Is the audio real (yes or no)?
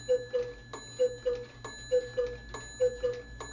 yes